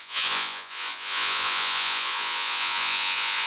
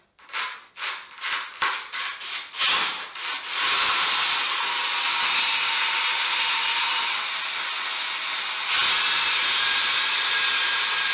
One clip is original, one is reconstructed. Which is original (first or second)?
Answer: second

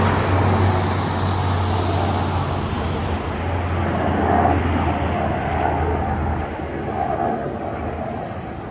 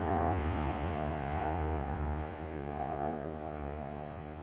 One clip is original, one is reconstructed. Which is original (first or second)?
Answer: first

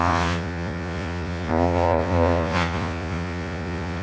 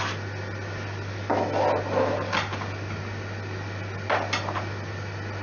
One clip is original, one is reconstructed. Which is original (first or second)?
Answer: second